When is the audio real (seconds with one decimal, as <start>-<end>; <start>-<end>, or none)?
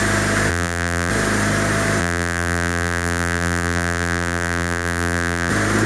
0.0-0.5; 1.1-2.0; 5.5-5.9